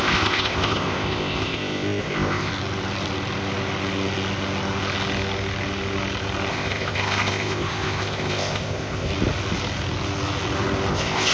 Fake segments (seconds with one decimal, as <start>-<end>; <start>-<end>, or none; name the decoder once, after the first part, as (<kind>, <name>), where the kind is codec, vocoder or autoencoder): 0.0-2.5 (codec, ZipCodec); 6.5-9.1; 10.9-11.3